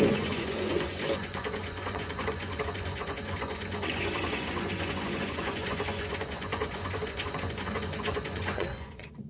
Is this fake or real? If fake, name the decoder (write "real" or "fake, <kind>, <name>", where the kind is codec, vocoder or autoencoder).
fake, vocoder, Vocos